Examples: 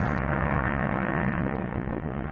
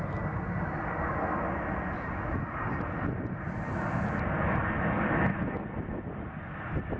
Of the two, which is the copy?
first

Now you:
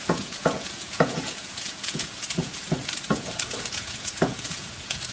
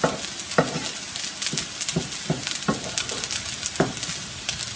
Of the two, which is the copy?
first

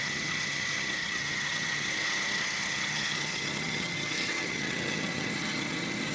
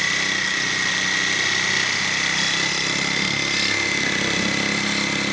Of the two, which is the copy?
first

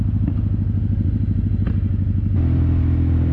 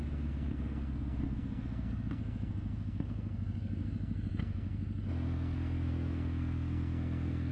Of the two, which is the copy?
second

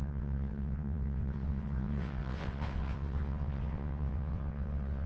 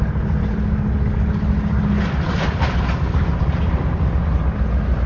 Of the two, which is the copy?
first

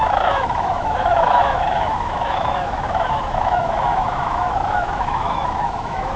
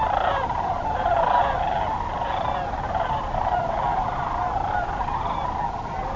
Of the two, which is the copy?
first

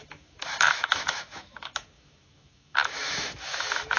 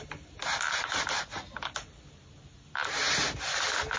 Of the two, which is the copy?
first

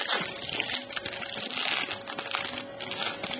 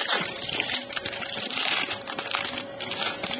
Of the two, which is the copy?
second